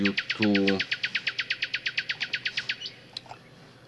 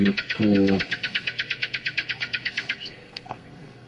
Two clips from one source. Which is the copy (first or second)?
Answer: second